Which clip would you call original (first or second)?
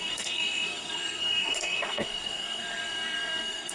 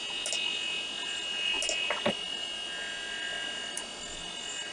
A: second